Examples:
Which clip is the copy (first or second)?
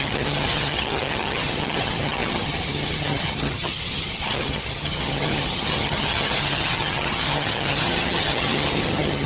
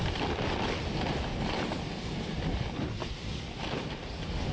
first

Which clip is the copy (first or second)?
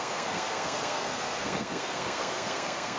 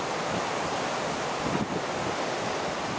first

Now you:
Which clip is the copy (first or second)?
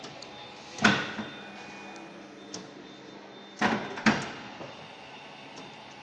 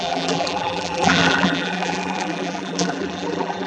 second